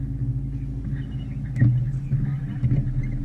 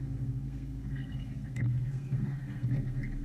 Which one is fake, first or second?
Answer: second